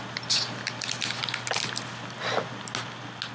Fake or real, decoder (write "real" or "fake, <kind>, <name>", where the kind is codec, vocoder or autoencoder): real